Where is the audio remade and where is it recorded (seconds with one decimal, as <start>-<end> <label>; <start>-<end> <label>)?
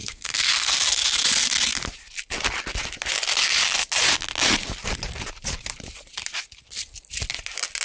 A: 0.0-0.8 remade; 0.8-7.8 recorded